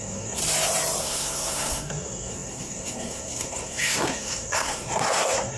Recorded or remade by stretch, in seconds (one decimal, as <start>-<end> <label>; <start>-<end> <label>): 0.0-0.4 remade; 0.4-1.0 recorded; 1.0-5.6 remade